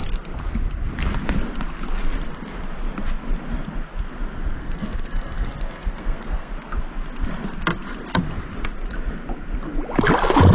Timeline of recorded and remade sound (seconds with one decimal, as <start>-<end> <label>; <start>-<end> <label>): 0.0-4.6 recorded; 4.6-6.5 remade; 6.5-10.5 recorded